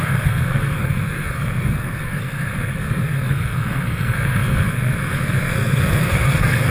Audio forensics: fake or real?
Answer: fake